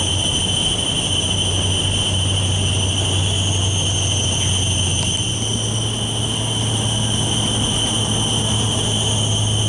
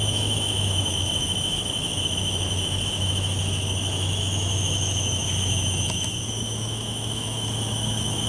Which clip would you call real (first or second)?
first